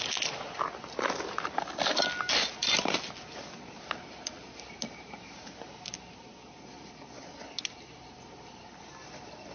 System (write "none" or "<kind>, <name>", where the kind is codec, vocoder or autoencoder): none